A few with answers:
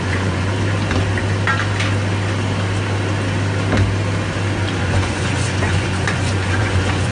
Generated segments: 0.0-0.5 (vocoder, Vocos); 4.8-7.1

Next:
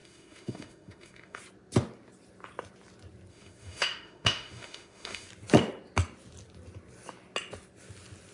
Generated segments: 0.0-1.4 (autoencoder, DAC-VAE); 3.3-5.3

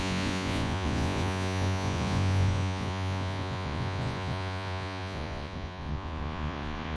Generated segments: 0.0-7.0 (vocoder, Vocos)

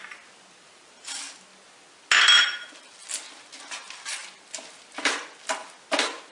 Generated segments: none

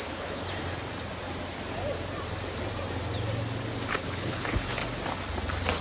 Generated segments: 0.0-0.4 (codec, HILCodec); 3.9-4.8

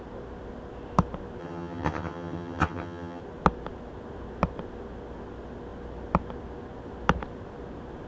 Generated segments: 1.4-3.2 (vocoder, HiFi-GAN)